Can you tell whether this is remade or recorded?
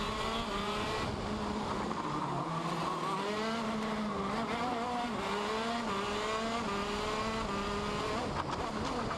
recorded